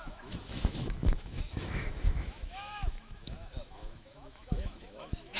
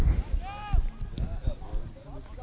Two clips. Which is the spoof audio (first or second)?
first